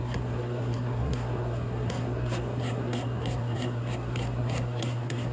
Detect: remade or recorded remade